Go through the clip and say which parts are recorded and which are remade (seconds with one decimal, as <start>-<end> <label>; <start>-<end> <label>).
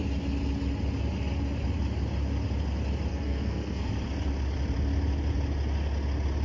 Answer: 0.0-3.1 recorded; 3.1-3.9 remade; 3.9-6.4 recorded